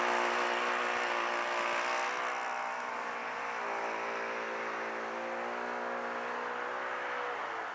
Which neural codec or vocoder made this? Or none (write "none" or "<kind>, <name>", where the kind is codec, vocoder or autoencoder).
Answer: none